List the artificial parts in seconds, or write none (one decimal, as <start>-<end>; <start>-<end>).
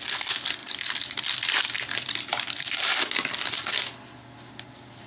0.6-3.7